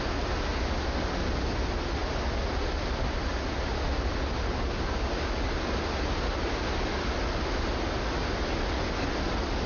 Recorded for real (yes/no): yes